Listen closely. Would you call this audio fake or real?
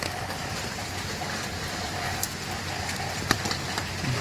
real